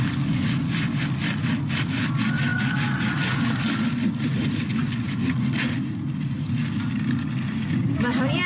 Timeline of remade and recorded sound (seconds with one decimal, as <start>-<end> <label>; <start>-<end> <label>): 0.0-8.5 recorded

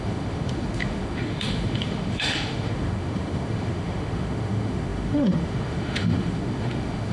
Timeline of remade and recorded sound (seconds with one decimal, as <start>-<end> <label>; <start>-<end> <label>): 0.0-7.1 remade

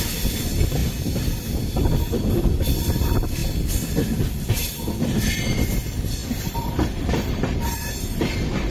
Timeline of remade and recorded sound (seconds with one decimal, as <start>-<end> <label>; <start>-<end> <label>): 0.0-8.7 remade

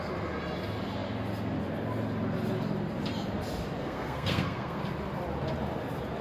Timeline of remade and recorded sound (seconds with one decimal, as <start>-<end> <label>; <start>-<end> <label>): 0.0-3.8 recorded; 3.8-4.8 remade; 4.8-6.2 recorded